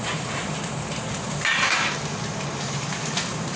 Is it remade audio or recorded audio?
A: remade